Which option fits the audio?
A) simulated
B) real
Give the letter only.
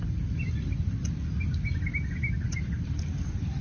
B